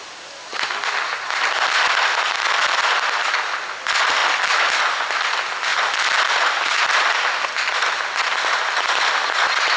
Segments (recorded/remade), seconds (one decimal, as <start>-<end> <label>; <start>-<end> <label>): 0.0-9.8 recorded